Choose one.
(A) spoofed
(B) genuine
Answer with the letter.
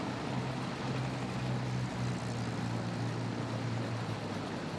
B